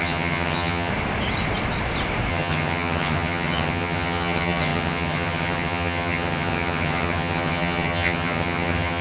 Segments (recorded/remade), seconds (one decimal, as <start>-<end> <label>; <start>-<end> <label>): 0.0-0.9 remade; 0.9-2.3 recorded; 2.3-9.0 remade

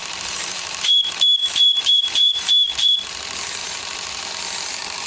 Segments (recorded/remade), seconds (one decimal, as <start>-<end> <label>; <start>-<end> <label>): 0.0-0.8 remade; 0.8-1.4 recorded; 1.4-2.5 remade; 2.5-3.6 recorded; 3.6-4.3 remade; 4.3-5.1 recorded

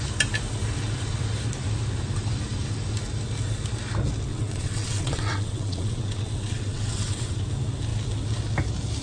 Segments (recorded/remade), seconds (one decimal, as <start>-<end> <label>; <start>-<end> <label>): 0.0-4.3 recorded; 4.3-7.4 remade; 7.4-9.0 recorded

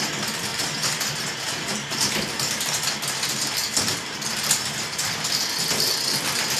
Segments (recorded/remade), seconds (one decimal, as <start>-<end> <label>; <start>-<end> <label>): 0.0-0.5 recorded; 0.5-2.9 remade; 2.9-3.6 recorded; 3.6-5.1 remade; 5.1-6.6 recorded

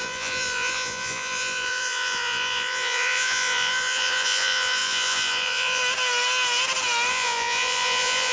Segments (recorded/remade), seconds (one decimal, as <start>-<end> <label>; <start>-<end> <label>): 0.0-5.8 remade; 5.8-7.1 recorded; 7.1-8.3 remade

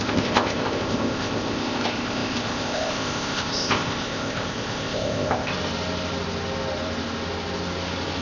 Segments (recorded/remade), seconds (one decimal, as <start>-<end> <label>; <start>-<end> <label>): 0.0-5.5 remade; 5.5-8.2 recorded

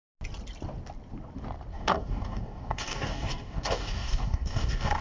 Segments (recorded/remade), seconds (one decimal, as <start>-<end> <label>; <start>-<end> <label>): 0.0-1.7 recorded; 1.7-5.0 remade

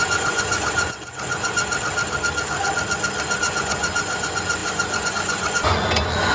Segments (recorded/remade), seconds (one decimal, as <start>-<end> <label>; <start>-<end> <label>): 0.0-1.7 remade; 1.7-3.4 recorded; 3.4-6.3 remade